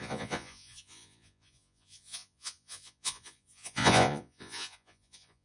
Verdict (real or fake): fake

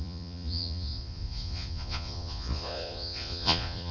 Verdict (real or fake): fake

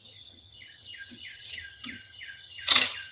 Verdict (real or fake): fake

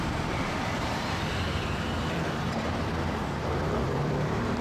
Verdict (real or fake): fake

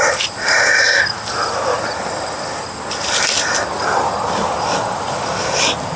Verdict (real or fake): real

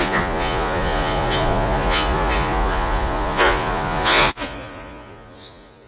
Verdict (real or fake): fake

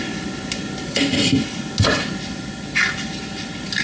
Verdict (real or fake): real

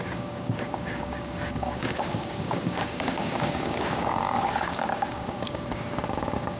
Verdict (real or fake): fake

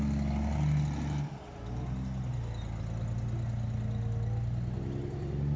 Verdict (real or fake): real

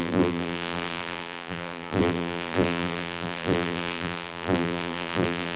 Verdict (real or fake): fake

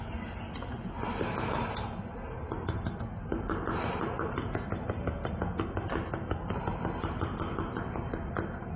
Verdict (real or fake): real